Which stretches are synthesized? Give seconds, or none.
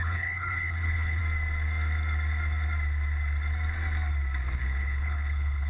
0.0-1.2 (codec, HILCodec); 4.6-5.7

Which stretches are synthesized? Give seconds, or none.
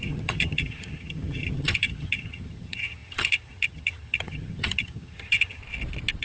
0.0-5.6 (vocoder, HiFi-GAN)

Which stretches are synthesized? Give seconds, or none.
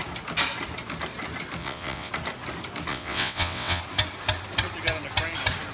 1.6-2.1 (vocoder, WaveNeXt); 2.9-3.8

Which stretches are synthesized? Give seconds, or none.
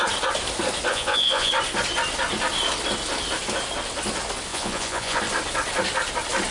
0.9-1.5 (vocoder, Vocos); 4.5-5.2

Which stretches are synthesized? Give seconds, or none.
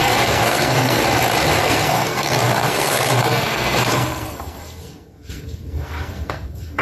0.0-1.0 (codec, SNAC); 1.6-6.8